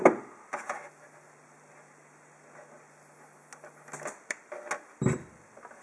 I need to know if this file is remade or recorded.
recorded